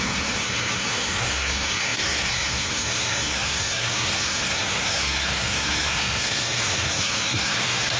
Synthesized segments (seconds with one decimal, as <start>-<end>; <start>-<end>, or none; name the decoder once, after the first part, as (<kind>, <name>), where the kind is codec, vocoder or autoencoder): 0.0-8.0 (codec, SNAC)